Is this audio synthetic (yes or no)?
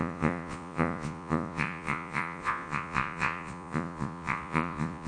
yes